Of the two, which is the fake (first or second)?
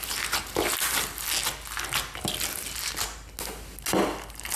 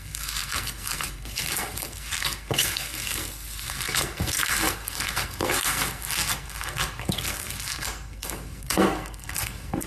second